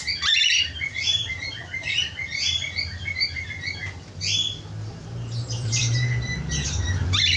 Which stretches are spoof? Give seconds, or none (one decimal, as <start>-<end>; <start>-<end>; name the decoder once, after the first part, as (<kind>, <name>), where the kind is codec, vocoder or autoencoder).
0.0-3.8 (vocoder, BigVGAN v2); 4.9-7.4